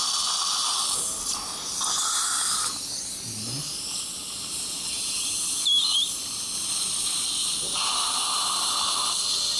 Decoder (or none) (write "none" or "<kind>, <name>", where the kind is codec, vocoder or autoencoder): none